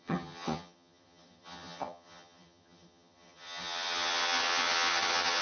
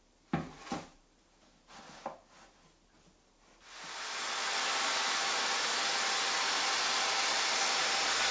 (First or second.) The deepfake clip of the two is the first